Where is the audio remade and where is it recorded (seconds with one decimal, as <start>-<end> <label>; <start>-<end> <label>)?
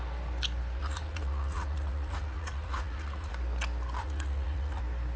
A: 0.0-0.8 recorded; 0.8-3.3 remade; 3.3-4.0 recorded; 4.0-4.8 remade; 4.8-5.2 recorded